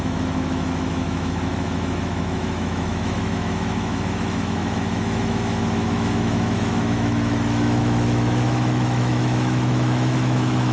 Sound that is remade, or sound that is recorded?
remade